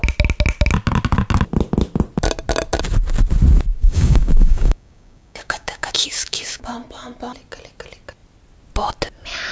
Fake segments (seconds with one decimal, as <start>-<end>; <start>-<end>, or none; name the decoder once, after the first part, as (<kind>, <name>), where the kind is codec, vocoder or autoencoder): 3.8-6.7 (codec, DAC)